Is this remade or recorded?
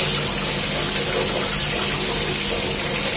recorded